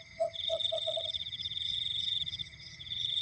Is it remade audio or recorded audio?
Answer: remade